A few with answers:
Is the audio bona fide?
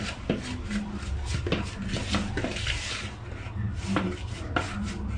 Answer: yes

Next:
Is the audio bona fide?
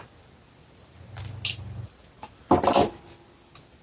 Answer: yes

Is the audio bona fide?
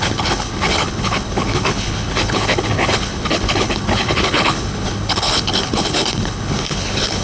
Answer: no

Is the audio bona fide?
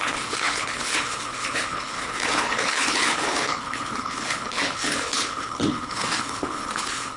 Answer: no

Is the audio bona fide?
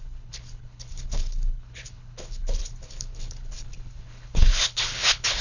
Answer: no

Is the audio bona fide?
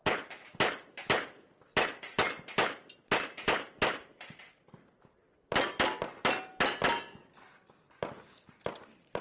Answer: yes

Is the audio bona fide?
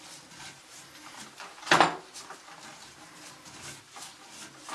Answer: yes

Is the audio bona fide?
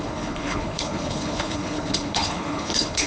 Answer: no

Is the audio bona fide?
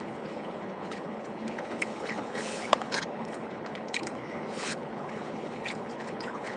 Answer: no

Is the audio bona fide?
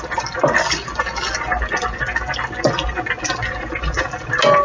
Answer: yes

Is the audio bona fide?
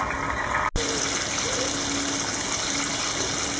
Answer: yes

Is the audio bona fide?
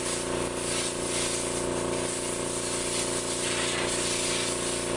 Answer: yes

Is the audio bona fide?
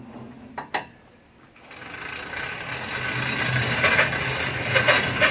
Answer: yes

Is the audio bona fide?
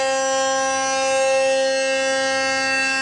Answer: yes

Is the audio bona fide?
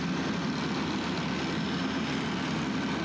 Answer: yes